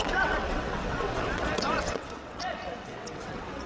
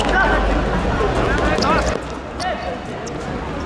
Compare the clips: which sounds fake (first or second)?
first